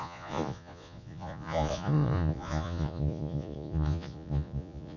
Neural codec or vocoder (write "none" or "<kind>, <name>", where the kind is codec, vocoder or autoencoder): vocoder, Vocos